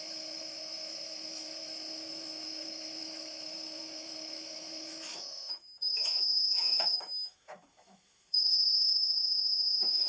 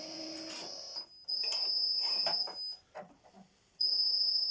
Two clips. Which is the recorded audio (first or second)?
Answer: second